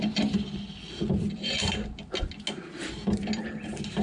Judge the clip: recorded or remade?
recorded